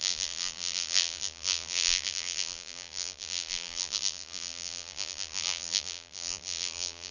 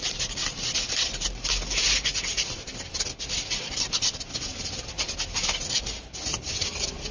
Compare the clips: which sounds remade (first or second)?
first